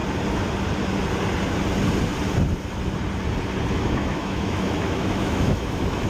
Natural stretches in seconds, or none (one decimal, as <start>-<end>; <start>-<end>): 0.0-3.7